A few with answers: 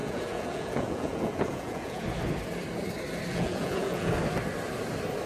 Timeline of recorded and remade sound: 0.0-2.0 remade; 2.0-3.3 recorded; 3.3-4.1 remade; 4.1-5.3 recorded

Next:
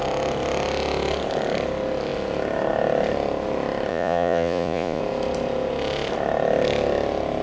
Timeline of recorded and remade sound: 0.0-3.9 recorded; 3.9-5.0 remade; 5.0-7.4 recorded